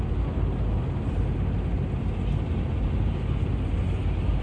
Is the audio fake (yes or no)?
no